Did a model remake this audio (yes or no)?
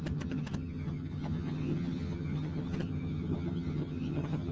yes